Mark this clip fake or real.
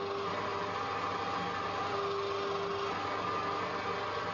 real